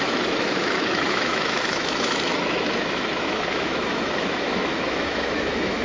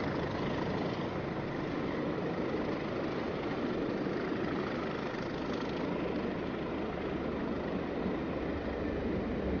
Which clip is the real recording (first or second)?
second